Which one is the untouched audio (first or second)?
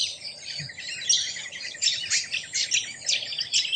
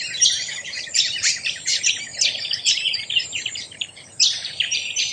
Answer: first